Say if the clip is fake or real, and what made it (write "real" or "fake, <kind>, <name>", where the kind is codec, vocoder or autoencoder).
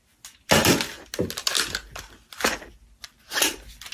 real